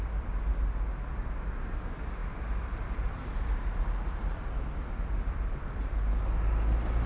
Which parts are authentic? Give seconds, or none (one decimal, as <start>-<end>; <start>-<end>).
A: 0.0-7.1

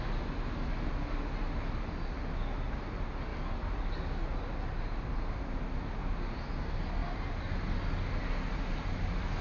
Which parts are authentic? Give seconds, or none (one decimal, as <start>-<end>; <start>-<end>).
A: 0.0-9.4